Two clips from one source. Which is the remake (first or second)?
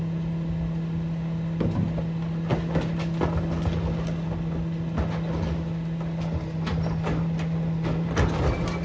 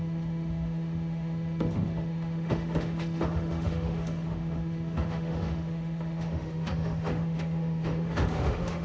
second